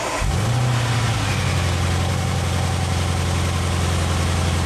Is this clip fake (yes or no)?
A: no